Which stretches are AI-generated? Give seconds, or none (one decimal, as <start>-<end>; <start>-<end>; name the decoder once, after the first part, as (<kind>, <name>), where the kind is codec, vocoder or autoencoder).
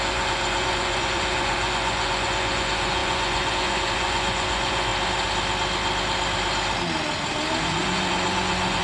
0.0-4.9 (vocoder, Vocos); 7.6-8.8